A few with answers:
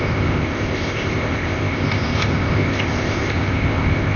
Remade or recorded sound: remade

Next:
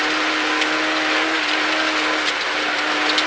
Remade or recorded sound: recorded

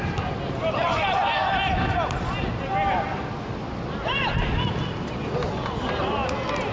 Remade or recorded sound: recorded